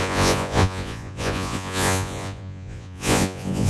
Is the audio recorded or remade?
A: remade